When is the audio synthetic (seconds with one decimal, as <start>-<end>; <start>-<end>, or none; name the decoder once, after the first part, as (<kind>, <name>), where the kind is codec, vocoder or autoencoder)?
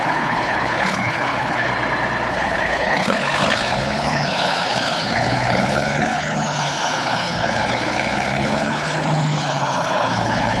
0.0-1.7 (codec, HILCodec); 2.3-10.6